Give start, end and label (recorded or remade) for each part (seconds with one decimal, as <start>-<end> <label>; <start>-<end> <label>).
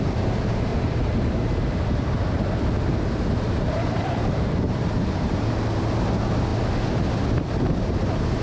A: 0.0-0.7 recorded; 0.7-5.5 remade; 5.5-8.4 recorded